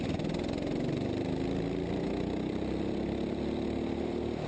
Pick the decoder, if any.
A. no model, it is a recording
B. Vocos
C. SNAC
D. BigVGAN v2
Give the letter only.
A